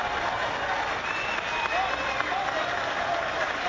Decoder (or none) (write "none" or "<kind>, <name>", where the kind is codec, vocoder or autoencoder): none